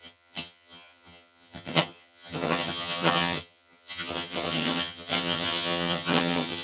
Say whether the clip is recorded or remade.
remade